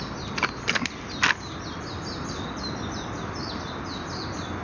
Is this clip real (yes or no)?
yes